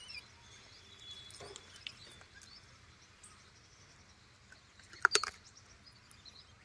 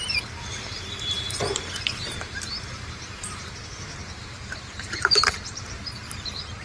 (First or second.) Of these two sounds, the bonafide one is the first